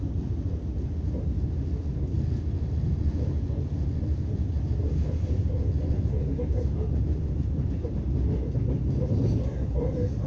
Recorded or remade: recorded